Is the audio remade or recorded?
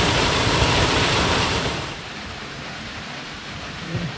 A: remade